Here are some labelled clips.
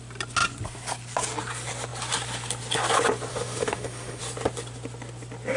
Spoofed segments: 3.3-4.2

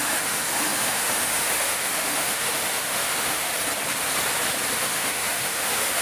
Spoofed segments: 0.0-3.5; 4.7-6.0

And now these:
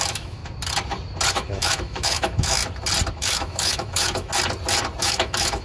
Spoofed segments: 0.0-0.4; 1.3-2.6; 3.1-4.3; 5.0-5.6

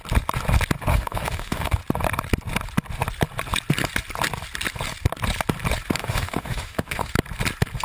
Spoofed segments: 0.9-1.8; 6.0-7.1